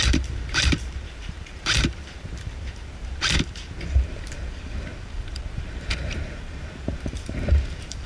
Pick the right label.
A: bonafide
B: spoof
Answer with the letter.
B